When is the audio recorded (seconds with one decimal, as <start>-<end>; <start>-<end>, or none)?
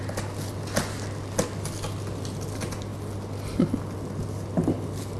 0.0-5.2